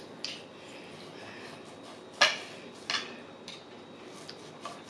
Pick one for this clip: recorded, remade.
recorded